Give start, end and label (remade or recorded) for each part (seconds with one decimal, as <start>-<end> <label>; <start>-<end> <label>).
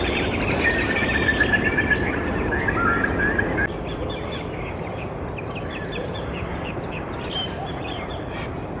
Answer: 0.0-1.3 remade; 1.3-6.5 recorded; 6.5-8.8 remade